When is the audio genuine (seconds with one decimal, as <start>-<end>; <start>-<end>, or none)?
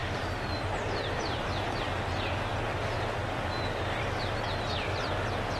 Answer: 1.6-5.6